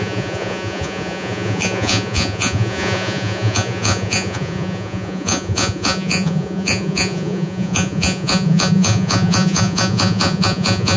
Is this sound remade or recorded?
remade